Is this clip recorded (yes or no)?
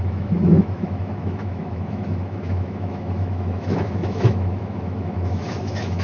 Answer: no